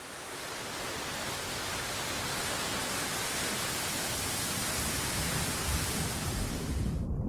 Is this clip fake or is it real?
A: real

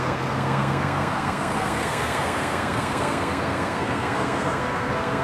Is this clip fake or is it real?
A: fake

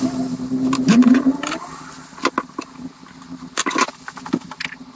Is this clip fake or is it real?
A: real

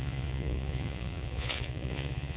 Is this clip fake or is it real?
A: fake